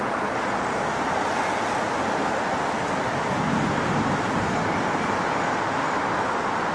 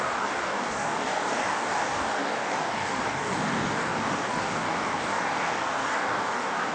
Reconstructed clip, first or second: second